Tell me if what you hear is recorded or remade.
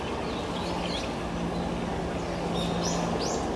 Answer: recorded